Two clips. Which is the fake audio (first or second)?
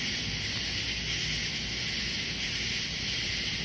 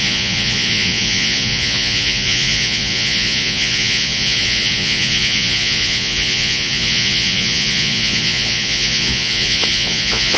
second